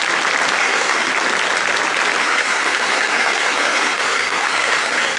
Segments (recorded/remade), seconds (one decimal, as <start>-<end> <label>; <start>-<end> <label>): 0.0-0.6 recorded; 0.6-1.1 remade; 1.1-2.2 recorded; 2.2-5.2 remade